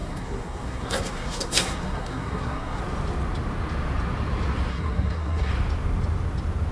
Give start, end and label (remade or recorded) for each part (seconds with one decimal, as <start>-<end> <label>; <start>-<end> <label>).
0.0-2.8 remade; 2.8-4.7 recorded; 4.7-5.5 remade; 5.5-6.7 recorded